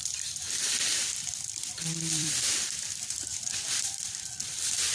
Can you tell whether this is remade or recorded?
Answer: remade